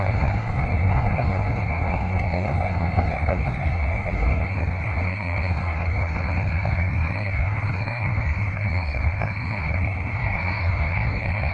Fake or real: fake